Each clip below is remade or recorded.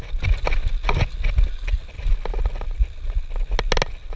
recorded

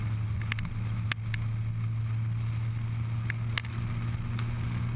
recorded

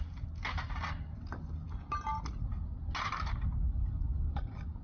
recorded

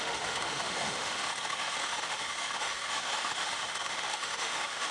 remade